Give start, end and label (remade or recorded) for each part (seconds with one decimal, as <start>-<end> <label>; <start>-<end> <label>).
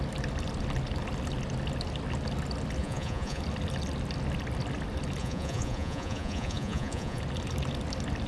0.0-2.8 recorded; 2.8-3.4 remade; 3.4-5.2 recorded; 5.2-7.2 remade; 7.2-8.3 recorded